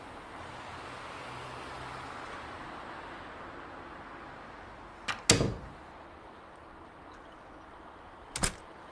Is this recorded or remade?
recorded